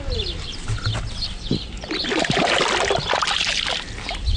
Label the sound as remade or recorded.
recorded